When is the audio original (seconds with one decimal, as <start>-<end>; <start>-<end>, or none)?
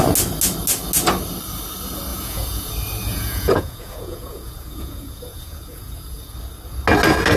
0.0-2.1; 2.7-3.1; 6.2-7.4